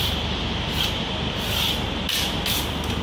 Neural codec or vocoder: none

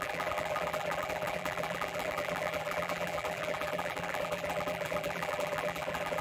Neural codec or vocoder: vocoder, BigVGAN v2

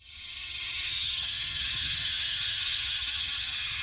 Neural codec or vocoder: vocoder, HiFi-GAN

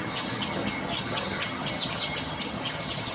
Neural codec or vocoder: vocoder, HiFi-GAN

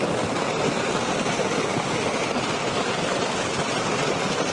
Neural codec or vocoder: none